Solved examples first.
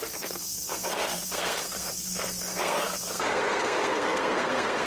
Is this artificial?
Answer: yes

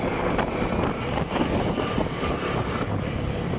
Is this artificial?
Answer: no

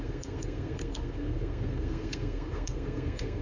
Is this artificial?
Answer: yes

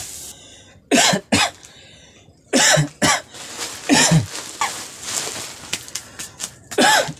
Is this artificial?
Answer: no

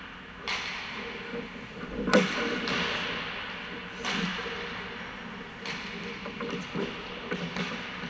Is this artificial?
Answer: no